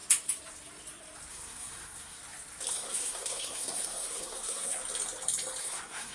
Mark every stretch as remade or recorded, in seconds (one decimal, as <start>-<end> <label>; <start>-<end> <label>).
0.0-1.3 recorded; 1.3-2.2 remade; 2.2-2.7 recorded; 2.7-4.8 remade; 4.8-5.6 recorded; 5.6-6.1 remade